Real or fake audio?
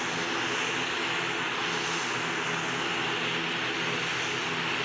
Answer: real